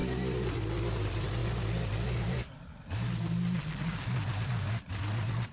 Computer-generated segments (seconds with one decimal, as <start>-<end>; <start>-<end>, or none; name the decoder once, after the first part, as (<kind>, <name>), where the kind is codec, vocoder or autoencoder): none